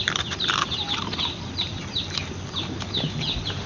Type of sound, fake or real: fake